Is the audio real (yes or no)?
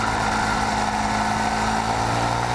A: yes